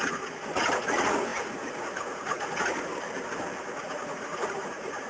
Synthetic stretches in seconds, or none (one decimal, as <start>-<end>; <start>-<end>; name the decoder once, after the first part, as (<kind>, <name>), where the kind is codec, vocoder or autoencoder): 0.0-2.9 (vocoder, Vocos); 3.6-5.1